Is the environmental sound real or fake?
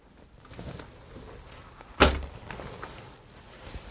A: real